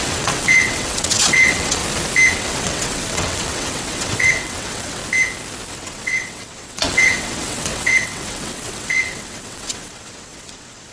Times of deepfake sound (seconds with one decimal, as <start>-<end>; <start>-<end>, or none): 0.0-1.8; 2.3-5.0; 5.7-10.9